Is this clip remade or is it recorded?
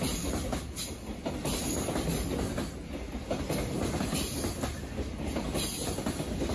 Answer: recorded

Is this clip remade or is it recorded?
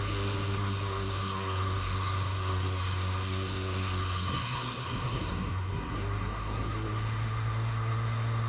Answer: remade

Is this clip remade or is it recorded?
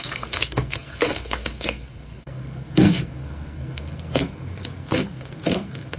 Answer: remade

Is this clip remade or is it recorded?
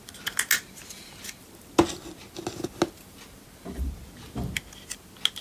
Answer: recorded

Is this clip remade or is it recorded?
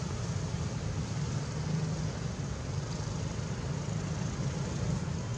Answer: recorded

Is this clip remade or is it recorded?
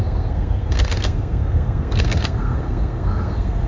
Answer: remade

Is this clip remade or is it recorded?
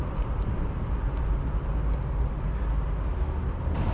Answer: recorded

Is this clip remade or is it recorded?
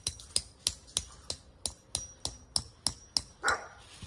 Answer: recorded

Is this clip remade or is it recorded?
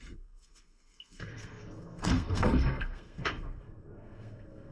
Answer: remade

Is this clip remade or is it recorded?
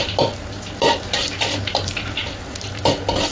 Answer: recorded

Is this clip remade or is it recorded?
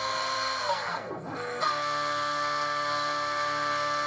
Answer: remade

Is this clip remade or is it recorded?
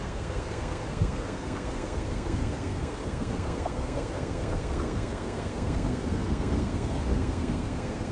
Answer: remade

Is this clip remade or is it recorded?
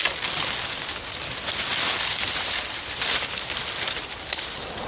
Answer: recorded